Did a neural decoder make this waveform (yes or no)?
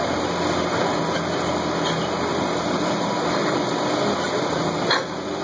no